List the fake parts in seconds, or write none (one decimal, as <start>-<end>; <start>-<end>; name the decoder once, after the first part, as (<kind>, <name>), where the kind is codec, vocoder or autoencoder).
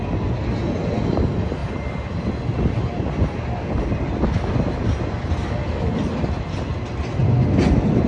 none